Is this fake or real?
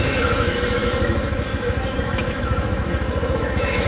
fake